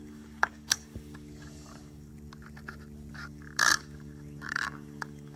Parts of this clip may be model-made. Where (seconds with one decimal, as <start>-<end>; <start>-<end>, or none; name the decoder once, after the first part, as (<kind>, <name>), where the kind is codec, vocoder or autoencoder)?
0.0-2.1 (codec, DAC); 3.1-5.4